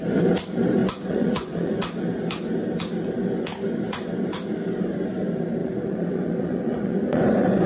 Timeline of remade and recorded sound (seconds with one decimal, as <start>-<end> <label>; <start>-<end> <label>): 0.0-0.8 recorded; 0.8-1.8 remade; 1.8-5.6 recorded; 5.6-7.7 remade